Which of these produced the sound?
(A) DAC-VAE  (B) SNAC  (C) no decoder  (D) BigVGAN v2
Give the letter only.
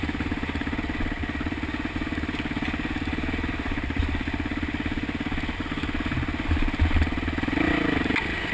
C